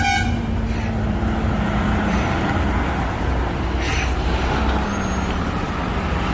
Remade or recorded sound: recorded